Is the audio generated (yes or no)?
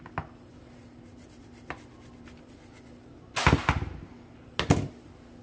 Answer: no